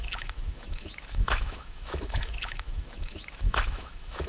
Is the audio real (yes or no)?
no